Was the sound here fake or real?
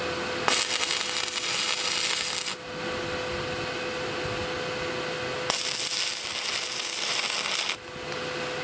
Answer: real